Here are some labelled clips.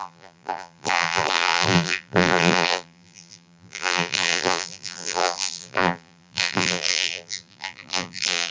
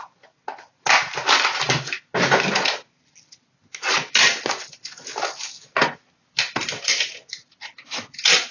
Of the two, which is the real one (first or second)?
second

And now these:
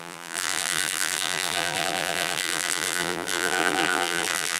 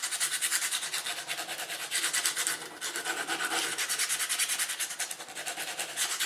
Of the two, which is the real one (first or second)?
second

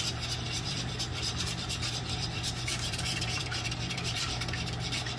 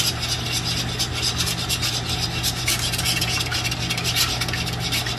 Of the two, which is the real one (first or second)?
second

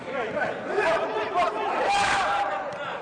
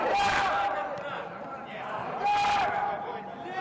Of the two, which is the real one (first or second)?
second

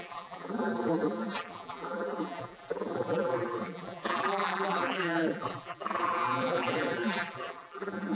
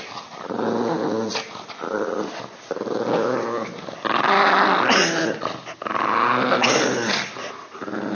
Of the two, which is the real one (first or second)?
second